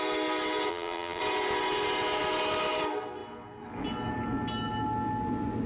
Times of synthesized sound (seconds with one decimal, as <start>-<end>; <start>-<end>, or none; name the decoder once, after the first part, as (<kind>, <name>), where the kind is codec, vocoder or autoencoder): 0.7-1.2 (vocoder, BigVGAN v2)